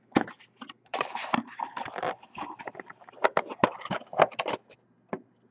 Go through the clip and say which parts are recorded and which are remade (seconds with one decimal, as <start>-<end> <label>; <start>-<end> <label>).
0.0-0.9 recorded; 0.9-2.3 remade; 2.3-5.5 recorded